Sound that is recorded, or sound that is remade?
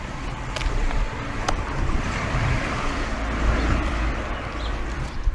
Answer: remade